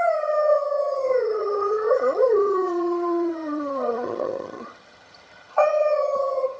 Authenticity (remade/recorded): remade